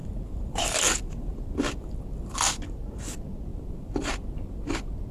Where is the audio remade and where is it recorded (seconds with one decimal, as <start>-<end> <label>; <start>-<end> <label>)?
0.0-2.0 remade; 2.0-3.5 recorded; 3.5-4.2 remade; 4.2-5.1 recorded